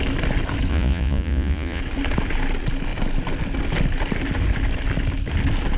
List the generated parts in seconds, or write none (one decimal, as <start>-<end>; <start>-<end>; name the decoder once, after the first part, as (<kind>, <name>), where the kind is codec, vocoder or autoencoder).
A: 0.7-1.8 (vocoder, Vocos)